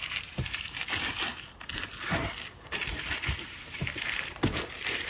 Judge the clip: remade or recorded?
remade